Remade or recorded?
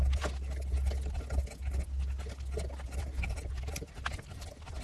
recorded